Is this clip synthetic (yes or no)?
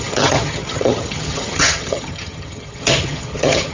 yes